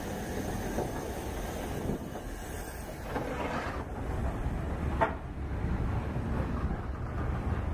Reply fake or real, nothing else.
real